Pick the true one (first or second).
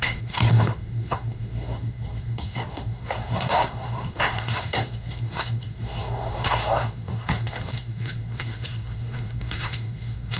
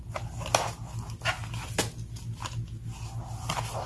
second